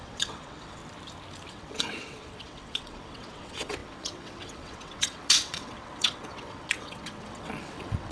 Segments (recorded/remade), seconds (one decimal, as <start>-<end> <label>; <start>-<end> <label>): 0.0-0.8 remade; 0.8-1.5 recorded; 1.5-8.1 remade